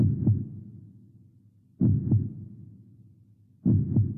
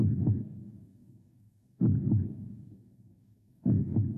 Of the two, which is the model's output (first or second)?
second